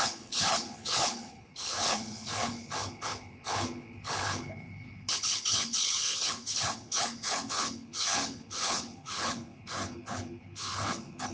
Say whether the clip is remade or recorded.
remade